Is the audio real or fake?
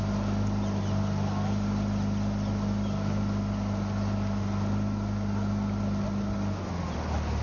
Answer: real